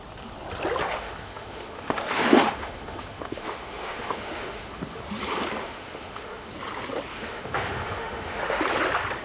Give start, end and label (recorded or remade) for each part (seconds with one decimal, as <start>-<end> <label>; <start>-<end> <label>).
0.0-0.8 recorded; 0.8-5.0 remade; 5.0-5.6 recorded; 5.6-6.5 remade; 6.5-7.1 recorded; 7.1-8.6 remade; 8.6-9.2 recorded